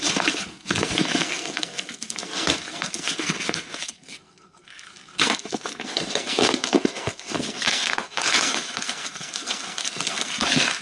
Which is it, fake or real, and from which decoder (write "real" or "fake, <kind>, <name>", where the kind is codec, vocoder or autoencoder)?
fake, codec, SNAC